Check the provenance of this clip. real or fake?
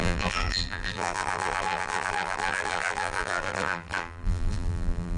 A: fake